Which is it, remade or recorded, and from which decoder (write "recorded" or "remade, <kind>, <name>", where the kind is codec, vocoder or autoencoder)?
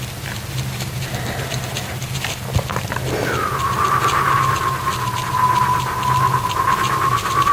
recorded